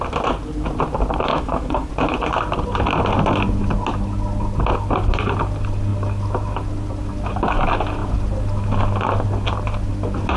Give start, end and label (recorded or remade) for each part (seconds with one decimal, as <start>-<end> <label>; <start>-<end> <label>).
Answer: 0.0-1.3 recorded; 1.3-1.9 remade; 1.9-10.4 recorded